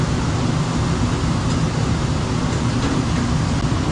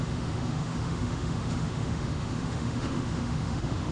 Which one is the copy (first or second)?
second